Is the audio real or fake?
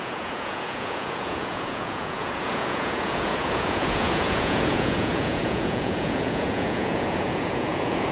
fake